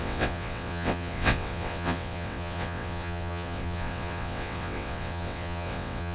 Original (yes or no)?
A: no